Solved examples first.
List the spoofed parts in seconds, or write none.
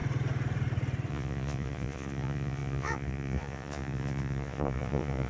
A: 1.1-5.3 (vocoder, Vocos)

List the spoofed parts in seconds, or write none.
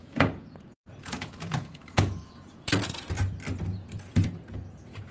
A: 0.0-3.1 (vocoder, Vocos); 3.7-5.1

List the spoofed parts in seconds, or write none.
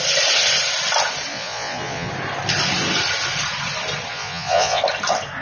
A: 1.3-2.1 (vocoder, Vocos); 4.1-4.8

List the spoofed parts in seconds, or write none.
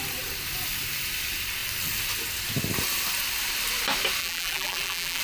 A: 4.2-5.2 (vocoder, BigVGAN v2)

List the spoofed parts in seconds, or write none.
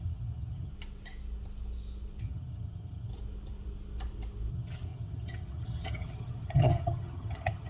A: 0.0-0.7 (vocoder, HiFi-GAN); 2.2-3.1; 4.5-7.7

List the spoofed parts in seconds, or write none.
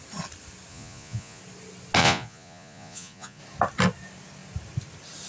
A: 0.7-1.4 (vocoder, Vocos); 2.0-3.4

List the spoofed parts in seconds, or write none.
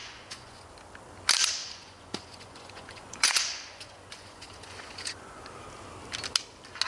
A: 0.0-0.7 (vocoder, Vocos); 1.6-5.5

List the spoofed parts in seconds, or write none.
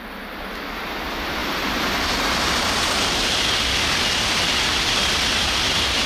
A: 1.4-3.4 (vocoder, BigVGAN v2)